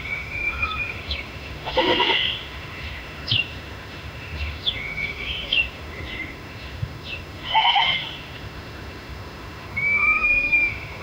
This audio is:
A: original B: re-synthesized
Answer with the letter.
B